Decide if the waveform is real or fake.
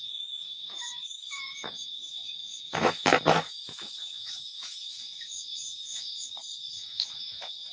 fake